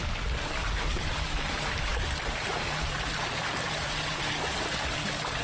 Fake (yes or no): no